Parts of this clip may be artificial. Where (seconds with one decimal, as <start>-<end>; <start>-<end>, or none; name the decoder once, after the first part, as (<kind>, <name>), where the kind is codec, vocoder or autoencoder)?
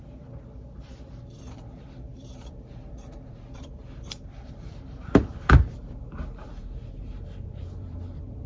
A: 0.0-0.9 (vocoder, BigVGAN v2); 1.5-8.5